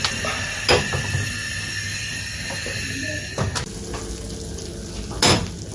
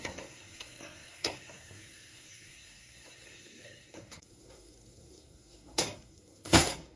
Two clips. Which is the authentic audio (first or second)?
first